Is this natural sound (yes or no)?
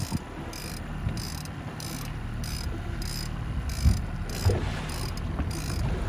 yes